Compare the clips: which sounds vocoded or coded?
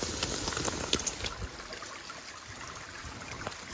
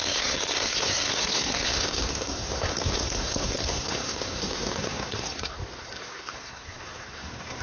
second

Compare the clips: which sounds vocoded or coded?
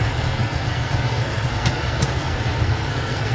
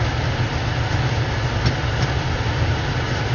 first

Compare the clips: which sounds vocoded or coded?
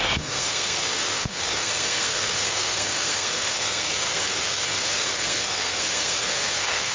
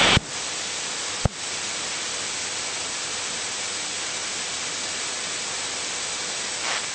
first